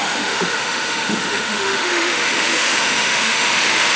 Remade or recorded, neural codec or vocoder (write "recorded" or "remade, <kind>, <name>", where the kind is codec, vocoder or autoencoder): remade, autoencoder, DAC-VAE